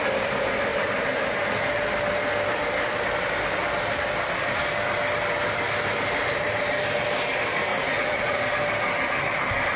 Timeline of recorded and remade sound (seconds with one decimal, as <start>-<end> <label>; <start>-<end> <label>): 0.0-7.7 recorded; 7.7-8.4 remade; 8.4-9.8 recorded